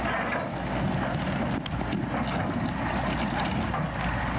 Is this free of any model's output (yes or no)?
yes